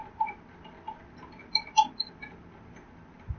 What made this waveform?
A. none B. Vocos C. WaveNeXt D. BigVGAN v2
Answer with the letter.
A